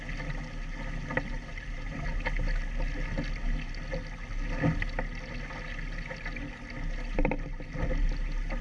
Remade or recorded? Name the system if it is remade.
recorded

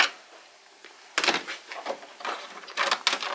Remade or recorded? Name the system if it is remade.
recorded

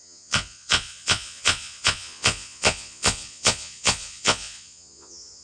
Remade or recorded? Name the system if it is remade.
remade, vocoder, Vocos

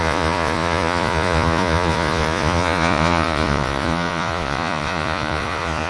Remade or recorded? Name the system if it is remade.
remade, vocoder, Vocos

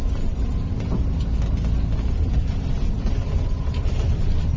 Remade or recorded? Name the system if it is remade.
recorded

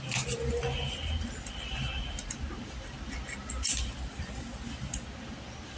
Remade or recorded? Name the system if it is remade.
recorded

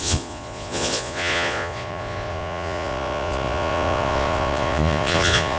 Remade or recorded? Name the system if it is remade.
remade, vocoder, Vocos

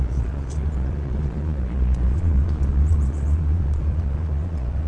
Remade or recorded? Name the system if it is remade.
remade, vocoder, Vocos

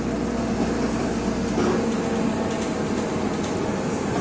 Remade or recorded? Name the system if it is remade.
recorded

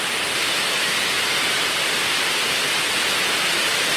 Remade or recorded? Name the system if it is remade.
recorded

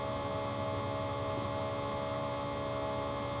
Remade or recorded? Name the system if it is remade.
recorded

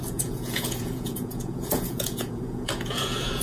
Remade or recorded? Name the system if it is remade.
remade, vocoder, Vocos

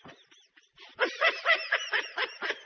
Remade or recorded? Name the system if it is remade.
recorded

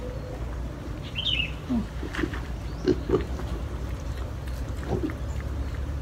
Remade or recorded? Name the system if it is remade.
recorded